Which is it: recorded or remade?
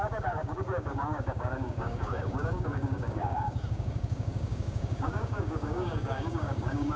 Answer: remade